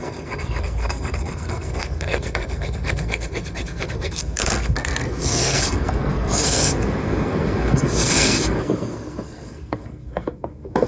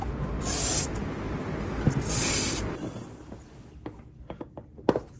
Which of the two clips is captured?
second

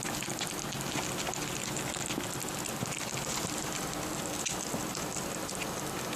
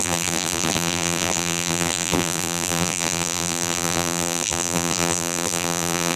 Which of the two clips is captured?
first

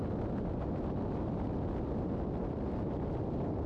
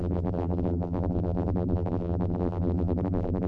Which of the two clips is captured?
first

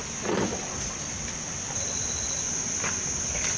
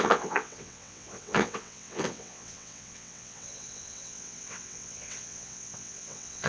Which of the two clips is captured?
first